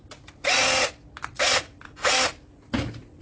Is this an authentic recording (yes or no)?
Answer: yes